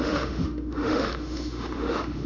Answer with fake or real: fake